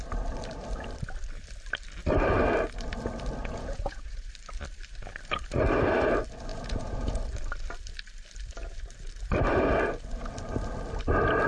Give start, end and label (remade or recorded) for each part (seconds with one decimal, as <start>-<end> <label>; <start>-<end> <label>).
0.0-3.4 recorded; 3.4-4.3 remade; 4.3-6.5 recorded; 6.5-7.2 remade; 7.2-11.5 recorded